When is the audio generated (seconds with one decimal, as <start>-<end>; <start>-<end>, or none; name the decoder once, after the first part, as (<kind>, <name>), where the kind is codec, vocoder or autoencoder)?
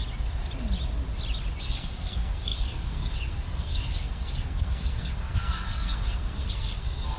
1.6-7.2 (codec, SNAC)